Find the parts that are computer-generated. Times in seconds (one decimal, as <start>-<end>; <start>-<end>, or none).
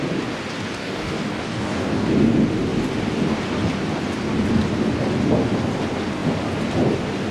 0.8-2.1